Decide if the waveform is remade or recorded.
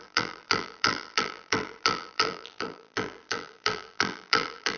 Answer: remade